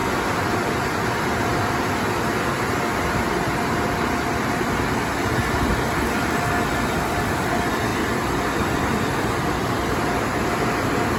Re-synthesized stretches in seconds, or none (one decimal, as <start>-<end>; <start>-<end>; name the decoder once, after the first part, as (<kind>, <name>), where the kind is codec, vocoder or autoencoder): 7.9-8.4 (vocoder, BigVGAN v2)